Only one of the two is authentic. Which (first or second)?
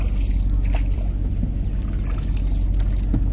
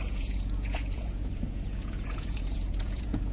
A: first